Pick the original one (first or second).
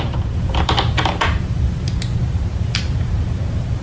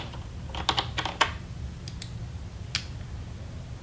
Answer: second